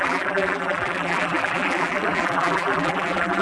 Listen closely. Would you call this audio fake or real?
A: fake